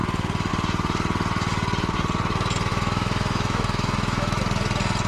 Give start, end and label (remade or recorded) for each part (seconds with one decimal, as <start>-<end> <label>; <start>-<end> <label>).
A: 0.0-2.7 recorded; 2.7-4.4 remade; 4.4-5.1 recorded